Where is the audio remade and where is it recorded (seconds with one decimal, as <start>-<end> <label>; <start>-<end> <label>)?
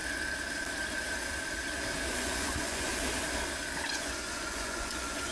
0.0-2.1 recorded; 2.1-2.9 remade; 2.9-3.9 recorded; 3.9-5.3 remade